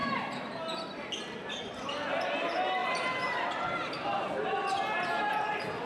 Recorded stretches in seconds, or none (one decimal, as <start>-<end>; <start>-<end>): 1.0-2.8; 3.7-5.9